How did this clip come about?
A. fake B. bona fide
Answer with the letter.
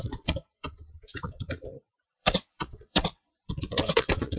A